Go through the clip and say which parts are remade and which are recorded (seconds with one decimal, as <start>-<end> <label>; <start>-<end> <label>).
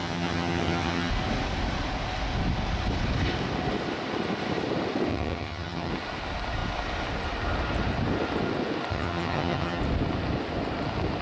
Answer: 0.0-1.1 remade; 1.1-5.1 recorded; 5.1-5.9 remade; 5.9-8.9 recorded; 8.9-9.8 remade; 9.8-11.2 recorded